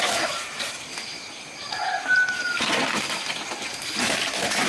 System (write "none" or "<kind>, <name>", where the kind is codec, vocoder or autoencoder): none